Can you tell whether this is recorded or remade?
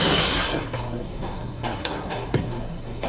remade